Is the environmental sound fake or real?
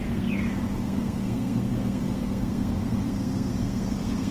fake